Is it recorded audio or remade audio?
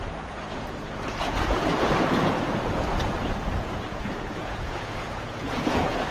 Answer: remade